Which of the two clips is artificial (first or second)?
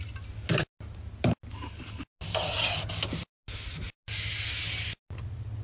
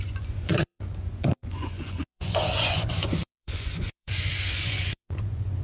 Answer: second